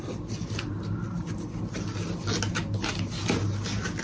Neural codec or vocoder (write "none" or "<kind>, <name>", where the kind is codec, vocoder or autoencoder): none